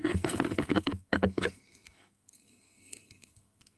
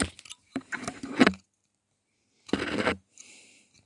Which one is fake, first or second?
first